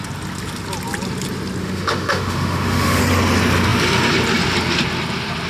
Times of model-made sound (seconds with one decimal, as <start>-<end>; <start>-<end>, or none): 1.6-3.0